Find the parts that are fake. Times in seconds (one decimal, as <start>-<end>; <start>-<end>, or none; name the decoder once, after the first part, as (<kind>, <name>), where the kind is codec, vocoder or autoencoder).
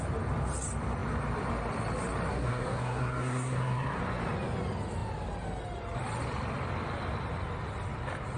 2.3-4.0 (codec, SNAC)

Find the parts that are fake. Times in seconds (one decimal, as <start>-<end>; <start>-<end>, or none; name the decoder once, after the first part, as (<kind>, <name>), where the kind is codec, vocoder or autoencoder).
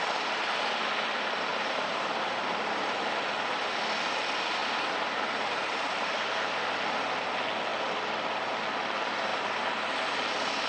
1.5-2.1 (vocoder, BigVGAN v2); 4.6-6.3; 9.3-10.0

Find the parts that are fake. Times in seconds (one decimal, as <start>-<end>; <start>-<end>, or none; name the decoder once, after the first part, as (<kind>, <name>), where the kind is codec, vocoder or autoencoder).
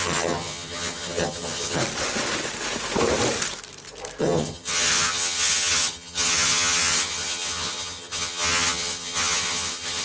0.0-1.8 (vocoder, HiFi-GAN); 4.2-10.0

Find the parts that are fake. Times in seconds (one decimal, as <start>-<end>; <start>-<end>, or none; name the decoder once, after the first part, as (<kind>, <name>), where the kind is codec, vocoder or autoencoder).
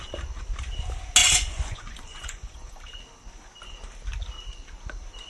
1.2-3.0 (vocoder, Vocos)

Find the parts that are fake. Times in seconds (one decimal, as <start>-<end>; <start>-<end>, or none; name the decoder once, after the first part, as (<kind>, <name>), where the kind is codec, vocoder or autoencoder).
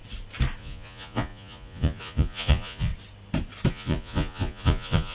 0.6-2.9 (vocoder, Vocos); 3.7-5.1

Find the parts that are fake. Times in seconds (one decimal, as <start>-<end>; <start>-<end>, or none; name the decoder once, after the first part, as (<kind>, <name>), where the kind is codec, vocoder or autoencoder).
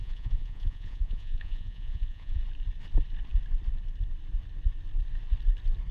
0.0-2.4 (vocoder, Vocos)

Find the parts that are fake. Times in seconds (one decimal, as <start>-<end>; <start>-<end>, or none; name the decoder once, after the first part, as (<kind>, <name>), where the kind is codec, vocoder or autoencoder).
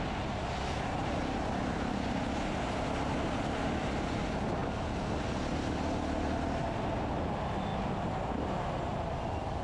none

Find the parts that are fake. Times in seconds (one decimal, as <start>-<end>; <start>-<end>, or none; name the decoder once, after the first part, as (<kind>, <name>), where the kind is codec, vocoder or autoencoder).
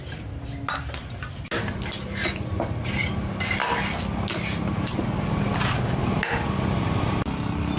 none